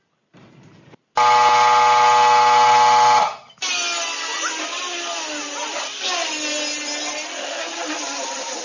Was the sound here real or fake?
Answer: real